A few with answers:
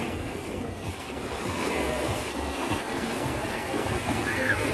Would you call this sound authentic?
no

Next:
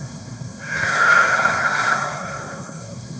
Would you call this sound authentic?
no